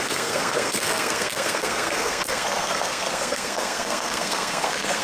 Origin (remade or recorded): remade